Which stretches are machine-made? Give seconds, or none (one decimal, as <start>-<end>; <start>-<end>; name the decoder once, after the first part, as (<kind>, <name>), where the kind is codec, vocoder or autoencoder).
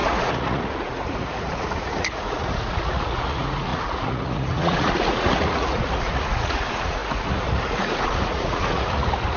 0.0-9.4 (vocoder, Vocos)